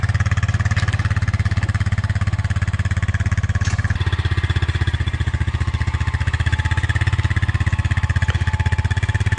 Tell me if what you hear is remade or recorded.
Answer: recorded